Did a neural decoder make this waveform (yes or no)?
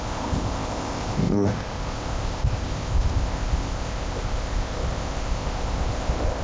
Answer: yes